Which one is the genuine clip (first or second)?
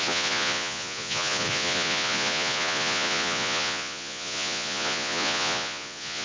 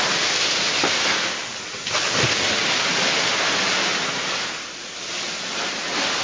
second